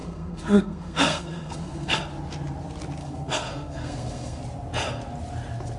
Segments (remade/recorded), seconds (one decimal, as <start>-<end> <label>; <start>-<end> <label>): 0.0-2.0 remade; 2.0-3.0 recorded; 3.0-4.4 remade; 4.4-5.8 recorded